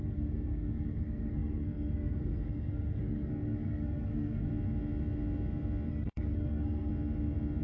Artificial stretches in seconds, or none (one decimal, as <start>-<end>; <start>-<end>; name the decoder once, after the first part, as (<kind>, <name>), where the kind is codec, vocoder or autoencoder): 0.0-4.5 (codec, SNAC); 5.9-6.9